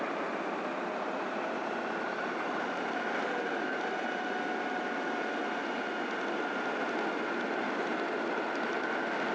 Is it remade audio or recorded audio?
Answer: recorded